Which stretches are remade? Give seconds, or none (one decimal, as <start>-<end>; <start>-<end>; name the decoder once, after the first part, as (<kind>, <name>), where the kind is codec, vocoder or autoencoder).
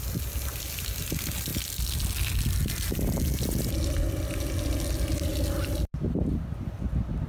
0.0-1.5 (vocoder, BigVGAN v2); 5.2-7.3